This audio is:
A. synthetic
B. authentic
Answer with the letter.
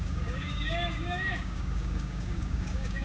A